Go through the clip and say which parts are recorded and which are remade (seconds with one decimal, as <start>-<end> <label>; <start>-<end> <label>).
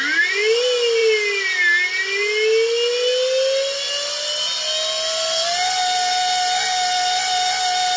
0.0-8.0 recorded